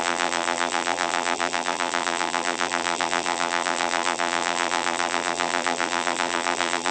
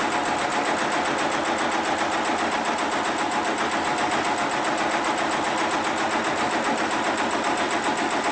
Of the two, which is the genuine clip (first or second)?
second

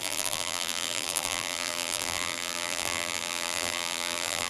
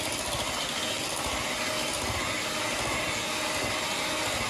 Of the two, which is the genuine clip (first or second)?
second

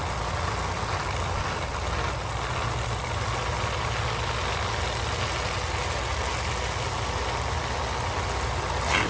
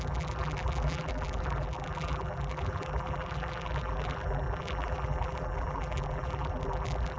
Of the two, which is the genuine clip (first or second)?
first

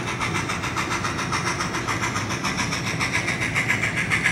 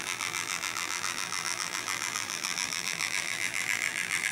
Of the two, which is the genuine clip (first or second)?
first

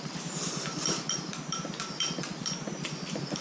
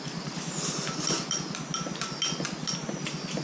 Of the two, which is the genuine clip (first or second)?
second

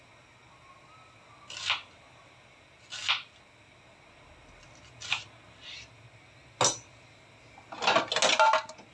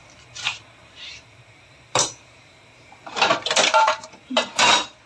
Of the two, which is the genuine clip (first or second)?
first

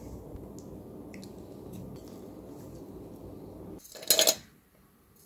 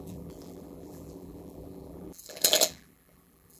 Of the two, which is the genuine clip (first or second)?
first